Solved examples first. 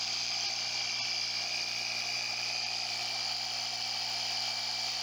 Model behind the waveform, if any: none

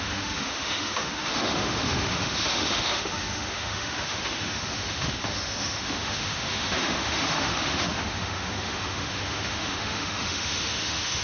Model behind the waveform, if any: autoencoder, DAC-VAE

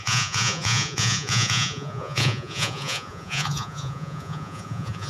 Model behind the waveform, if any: vocoder, Vocos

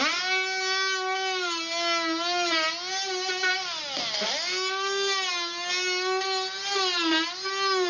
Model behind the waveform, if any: none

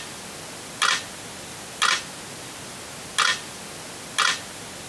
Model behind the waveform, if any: none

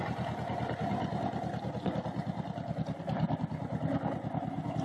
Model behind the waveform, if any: none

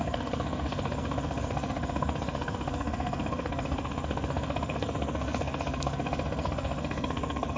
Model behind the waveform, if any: codec, SNAC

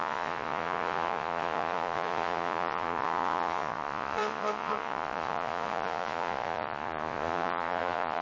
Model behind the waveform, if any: vocoder, Vocos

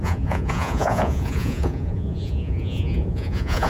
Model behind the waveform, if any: vocoder, Vocos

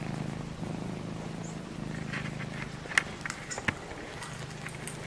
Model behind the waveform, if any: none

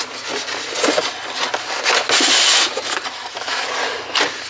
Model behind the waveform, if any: none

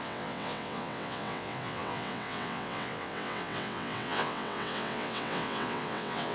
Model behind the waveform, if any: vocoder, WaveNeXt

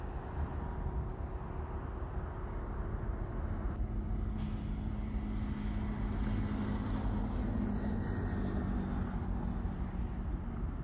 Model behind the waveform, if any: none